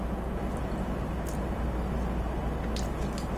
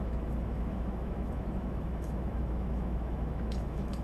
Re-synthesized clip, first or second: second